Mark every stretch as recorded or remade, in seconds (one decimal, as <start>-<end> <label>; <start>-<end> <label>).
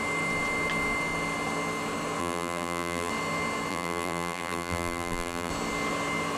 0.0-2.2 recorded; 2.2-3.1 remade; 3.1-3.7 recorded; 3.7-5.5 remade; 5.5-6.4 recorded